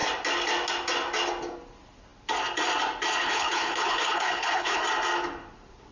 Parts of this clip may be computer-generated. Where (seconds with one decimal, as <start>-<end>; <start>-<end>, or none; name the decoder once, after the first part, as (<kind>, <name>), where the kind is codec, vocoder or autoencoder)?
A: 3.2-4.8 (codec, HILCodec)